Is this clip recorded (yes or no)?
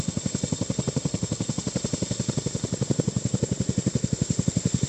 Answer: yes